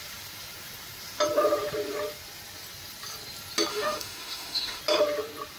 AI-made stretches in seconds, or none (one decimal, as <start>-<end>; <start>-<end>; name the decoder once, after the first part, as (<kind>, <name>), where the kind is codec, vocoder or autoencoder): 3.7-4.8 (autoencoder, DAC-VAE)